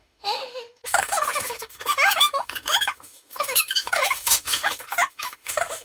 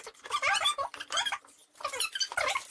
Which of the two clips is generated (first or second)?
first